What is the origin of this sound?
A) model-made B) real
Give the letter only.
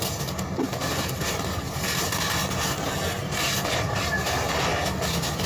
B